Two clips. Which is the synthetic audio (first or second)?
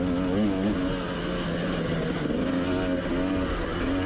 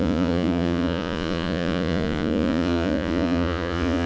second